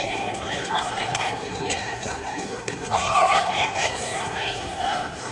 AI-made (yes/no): yes